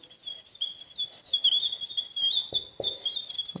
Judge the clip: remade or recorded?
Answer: recorded